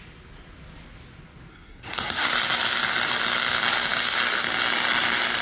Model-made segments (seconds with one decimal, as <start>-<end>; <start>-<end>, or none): 1.5-2.3